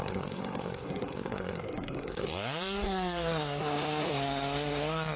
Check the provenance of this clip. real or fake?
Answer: fake